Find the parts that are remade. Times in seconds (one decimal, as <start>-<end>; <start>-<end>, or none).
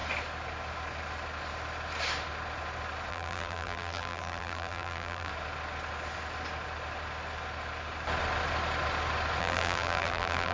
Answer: 3.1-5.3; 9.4-10.5